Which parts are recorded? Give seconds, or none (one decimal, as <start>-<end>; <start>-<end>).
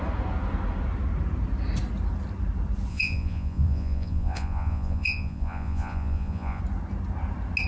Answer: 0.0-2.9; 6.6-7.7